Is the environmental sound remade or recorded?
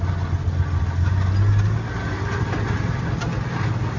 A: recorded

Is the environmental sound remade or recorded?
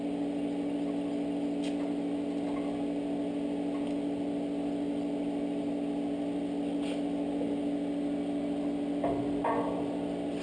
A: recorded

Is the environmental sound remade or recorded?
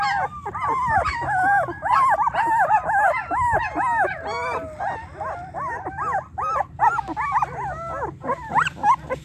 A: recorded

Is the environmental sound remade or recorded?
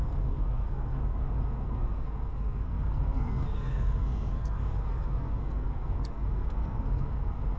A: remade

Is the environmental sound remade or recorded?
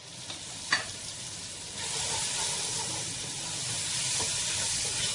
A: recorded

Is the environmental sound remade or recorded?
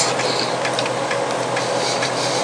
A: recorded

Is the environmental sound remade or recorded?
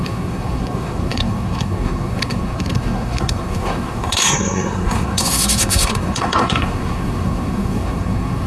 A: remade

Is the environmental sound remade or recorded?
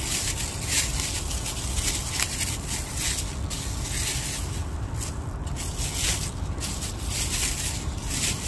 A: recorded